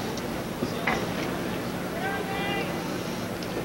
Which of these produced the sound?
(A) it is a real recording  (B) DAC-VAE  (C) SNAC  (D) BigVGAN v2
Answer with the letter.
A